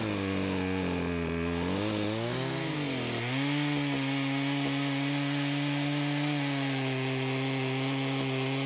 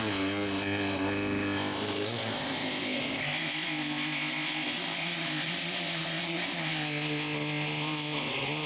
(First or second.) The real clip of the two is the first